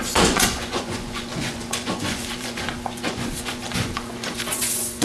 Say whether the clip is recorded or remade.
remade